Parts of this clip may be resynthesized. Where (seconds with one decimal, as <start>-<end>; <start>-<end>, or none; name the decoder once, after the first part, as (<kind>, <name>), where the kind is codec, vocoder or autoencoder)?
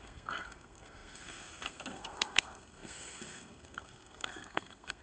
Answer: 0.0-5.0 (codec, SNAC)